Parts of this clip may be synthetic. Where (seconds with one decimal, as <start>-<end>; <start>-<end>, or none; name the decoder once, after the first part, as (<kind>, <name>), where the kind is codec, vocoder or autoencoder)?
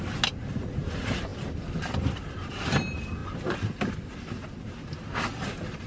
none